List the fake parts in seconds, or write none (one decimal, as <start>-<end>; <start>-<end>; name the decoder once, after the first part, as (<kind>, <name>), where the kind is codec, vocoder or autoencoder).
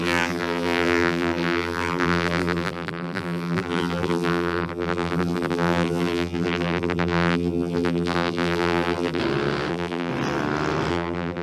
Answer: 0.0-9.2 (vocoder, BigVGAN v2); 9.7-10.1; 10.9-11.4